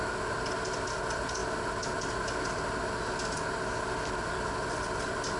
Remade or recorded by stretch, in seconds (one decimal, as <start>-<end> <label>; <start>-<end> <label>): 0.0-5.4 recorded

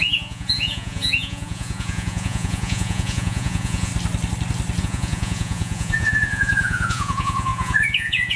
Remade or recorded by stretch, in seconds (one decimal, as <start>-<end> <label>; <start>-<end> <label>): 0.0-3.9 remade; 3.9-4.8 recorded; 4.8-8.4 remade

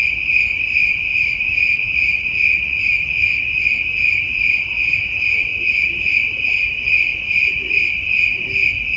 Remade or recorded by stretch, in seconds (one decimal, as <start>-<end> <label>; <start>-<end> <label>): 0.0-1.1 recorded; 1.1-3.1 remade; 3.1-7.1 recorded; 7.1-7.8 remade; 7.8-9.0 recorded

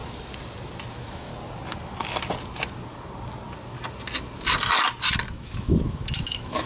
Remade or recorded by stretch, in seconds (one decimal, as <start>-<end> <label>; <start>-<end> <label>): 0.0-0.9 recorded; 0.9-1.3 remade; 1.3-5.3 recorded; 5.3-6.7 remade